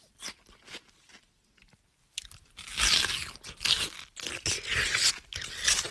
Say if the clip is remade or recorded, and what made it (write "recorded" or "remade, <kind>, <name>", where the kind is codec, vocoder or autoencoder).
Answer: recorded